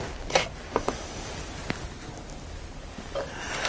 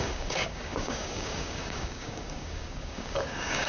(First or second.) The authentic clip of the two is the first